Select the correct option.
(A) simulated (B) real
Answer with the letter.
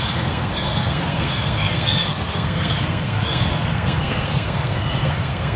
A